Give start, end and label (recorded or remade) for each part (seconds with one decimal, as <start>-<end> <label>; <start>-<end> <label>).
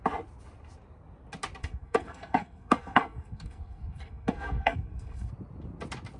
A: 0.0-1.6 recorded; 1.6-5.3 remade; 5.3-6.2 recorded